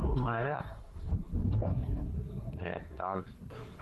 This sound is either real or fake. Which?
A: fake